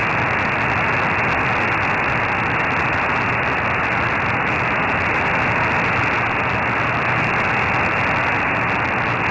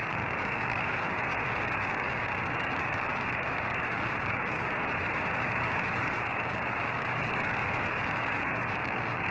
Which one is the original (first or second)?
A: first